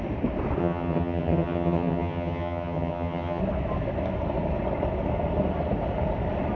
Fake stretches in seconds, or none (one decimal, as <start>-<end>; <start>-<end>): 0.6-3.4